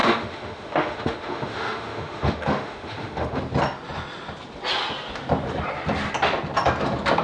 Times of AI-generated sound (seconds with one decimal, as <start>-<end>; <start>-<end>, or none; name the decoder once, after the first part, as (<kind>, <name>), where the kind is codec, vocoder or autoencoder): 0.0-3.4 (autoencoder, DAC-VAE)

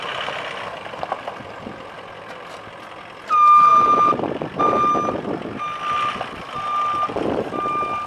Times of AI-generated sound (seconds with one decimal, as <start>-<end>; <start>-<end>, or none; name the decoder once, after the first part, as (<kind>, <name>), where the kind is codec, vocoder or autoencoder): none

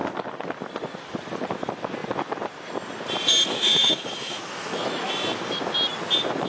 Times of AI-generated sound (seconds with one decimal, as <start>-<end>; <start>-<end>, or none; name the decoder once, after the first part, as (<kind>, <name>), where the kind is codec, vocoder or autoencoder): 3.4-5.1 (autoencoder, DAC-VAE)

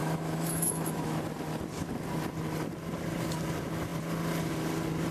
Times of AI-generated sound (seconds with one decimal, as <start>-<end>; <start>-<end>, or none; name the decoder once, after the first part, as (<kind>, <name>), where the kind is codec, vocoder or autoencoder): 0.0-1.2 (autoencoder, DAC-VAE)

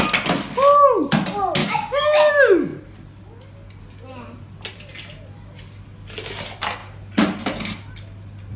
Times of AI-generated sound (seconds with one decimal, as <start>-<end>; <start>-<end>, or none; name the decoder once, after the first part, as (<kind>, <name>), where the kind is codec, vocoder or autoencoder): 1.6-2.3 (autoencoder, DAC-VAE)